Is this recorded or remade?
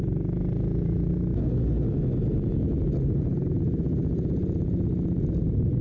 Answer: recorded